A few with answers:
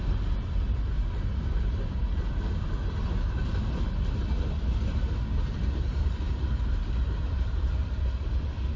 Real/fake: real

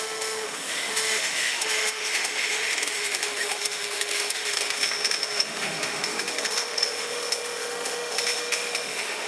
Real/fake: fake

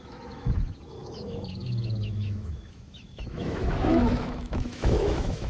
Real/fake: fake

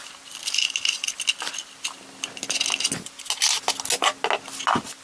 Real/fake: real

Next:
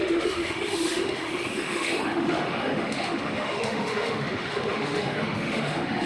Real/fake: fake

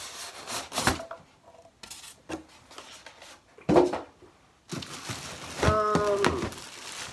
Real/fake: real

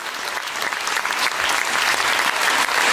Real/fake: real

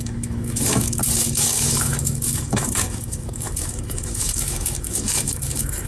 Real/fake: fake